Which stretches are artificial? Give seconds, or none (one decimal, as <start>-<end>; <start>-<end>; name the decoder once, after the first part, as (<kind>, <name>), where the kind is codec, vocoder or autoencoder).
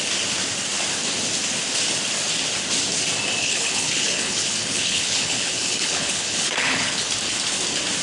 3.4-7.1 (codec, HILCodec)